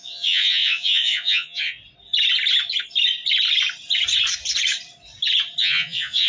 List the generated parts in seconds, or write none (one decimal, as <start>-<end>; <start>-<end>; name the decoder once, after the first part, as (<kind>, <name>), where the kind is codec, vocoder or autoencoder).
0.0-1.8 (vocoder, Vocos); 5.6-6.3